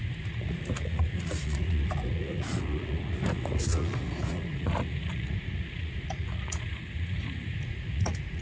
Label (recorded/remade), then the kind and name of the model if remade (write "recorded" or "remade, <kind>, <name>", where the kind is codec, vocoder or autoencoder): remade, vocoder, Vocos